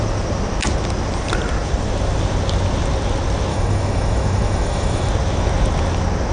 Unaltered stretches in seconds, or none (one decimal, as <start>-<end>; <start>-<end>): 0.0-3.5; 5.1-6.3